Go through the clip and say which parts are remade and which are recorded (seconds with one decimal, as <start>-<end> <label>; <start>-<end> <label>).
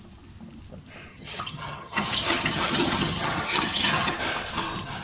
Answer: 0.0-1.1 recorded; 1.1-4.1 remade; 4.1-5.0 recorded